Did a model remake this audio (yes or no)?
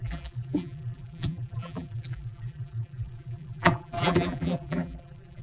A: yes